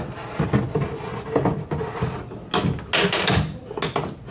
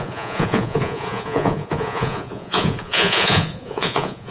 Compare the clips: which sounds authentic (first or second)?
first